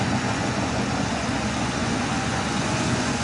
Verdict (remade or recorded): remade